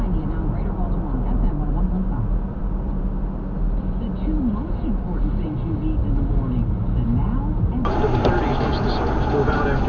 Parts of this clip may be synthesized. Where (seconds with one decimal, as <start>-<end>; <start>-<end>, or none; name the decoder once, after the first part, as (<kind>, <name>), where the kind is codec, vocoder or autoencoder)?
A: none